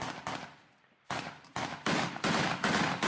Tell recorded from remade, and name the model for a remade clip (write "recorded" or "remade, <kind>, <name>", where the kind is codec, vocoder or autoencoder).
recorded